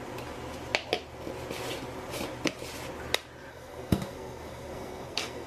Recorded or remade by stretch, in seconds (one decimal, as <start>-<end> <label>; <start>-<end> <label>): 0.0-3.5 recorded; 3.5-5.5 remade

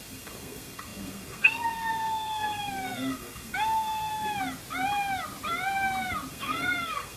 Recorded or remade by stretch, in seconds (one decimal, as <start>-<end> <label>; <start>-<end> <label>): 0.0-4.1 remade; 4.1-6.3 recorded; 6.3-7.2 remade

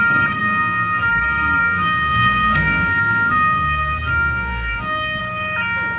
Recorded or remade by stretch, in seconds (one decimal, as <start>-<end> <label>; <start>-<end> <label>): 0.0-0.4 recorded; 0.4-1.1 remade; 1.1-1.6 recorded; 1.6-5.2 remade; 5.2-6.0 recorded

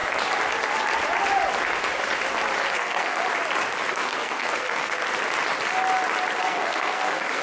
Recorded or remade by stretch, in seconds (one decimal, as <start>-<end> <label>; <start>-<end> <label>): 0.0-2.7 recorded; 2.7-3.2 remade; 3.2-3.9 recorded; 3.9-5.0 remade; 5.0-6.4 recorded; 6.4-7.4 remade

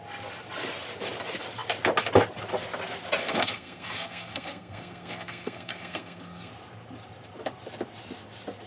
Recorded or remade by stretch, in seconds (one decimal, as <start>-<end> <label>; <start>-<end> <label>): 0.0-3.2 recorded; 3.2-6.5 remade; 6.5-8.7 recorded

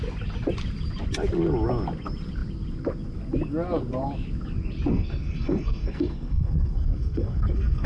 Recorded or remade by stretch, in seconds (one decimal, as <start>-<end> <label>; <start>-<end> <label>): 0.0-4.9 recorded; 4.9-7.9 remade

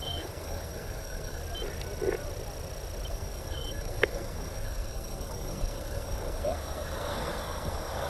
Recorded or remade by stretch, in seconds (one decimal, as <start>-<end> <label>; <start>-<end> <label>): 0.0-1.4 remade; 1.4-3.1 recorded; 3.1-8.1 remade